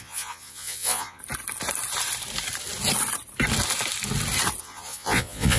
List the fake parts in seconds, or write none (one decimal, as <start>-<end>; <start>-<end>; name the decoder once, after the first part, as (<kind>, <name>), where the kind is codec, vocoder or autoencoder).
0.0-1.2 (vocoder, Vocos); 4.6-5.6